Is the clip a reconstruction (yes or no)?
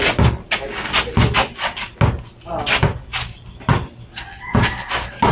no